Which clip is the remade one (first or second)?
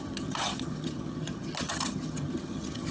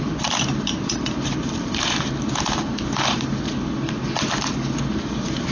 first